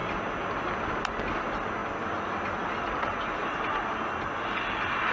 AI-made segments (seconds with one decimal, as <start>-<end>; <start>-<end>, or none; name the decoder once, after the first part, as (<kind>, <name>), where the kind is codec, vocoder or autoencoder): none